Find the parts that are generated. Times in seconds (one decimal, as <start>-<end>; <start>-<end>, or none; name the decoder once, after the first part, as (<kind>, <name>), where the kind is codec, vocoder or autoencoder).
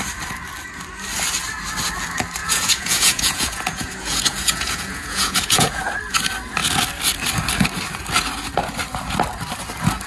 2.4-5.8 (vocoder, Vocos)